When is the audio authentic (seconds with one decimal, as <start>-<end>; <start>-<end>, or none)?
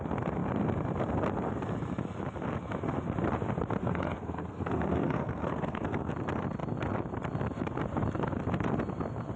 0.0-3.8; 6.1-9.4